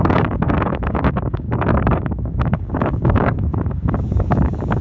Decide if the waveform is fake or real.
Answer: fake